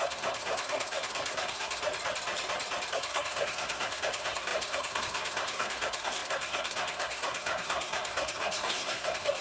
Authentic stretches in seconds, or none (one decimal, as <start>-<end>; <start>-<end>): 1.8-2.9